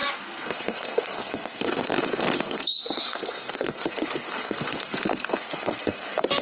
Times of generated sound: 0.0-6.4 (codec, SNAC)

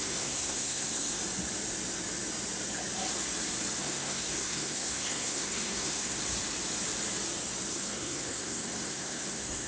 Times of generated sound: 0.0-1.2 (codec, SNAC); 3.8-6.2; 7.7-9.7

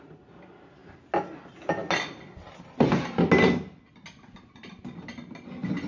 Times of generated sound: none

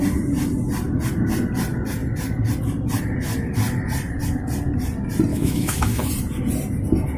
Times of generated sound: 5.3-6.1 (autoencoder, DAC-VAE)

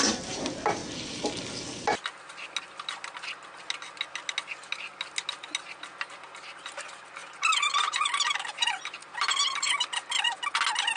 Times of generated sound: none